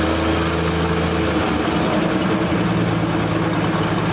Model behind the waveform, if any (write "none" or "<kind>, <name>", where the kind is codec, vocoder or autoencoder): none